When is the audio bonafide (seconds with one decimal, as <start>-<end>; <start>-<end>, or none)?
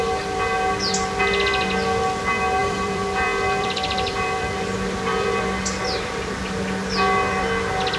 0.0-2.6; 5.4-8.0